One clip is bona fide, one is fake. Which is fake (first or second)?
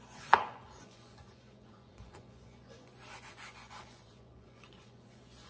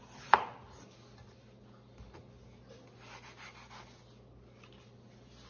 first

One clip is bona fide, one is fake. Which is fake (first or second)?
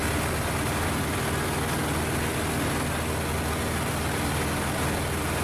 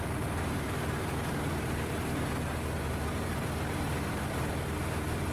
second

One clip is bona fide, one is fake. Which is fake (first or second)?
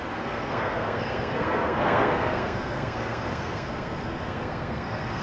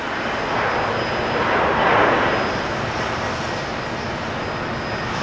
first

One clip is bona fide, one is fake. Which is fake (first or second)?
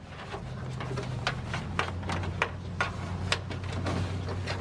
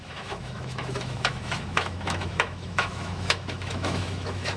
second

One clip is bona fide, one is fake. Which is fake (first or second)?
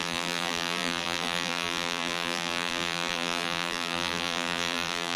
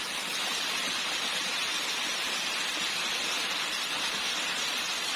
first